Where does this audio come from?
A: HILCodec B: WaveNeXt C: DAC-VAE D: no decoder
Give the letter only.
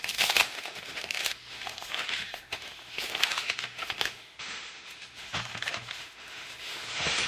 C